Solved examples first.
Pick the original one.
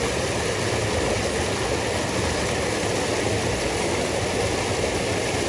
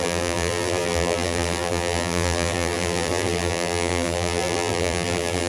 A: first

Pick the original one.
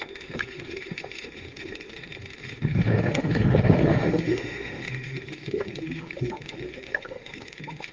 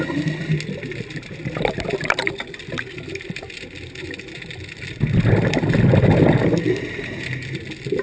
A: second